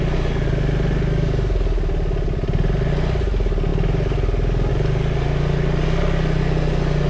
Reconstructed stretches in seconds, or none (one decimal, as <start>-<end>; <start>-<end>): none